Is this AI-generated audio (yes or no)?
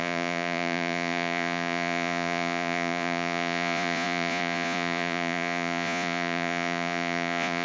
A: yes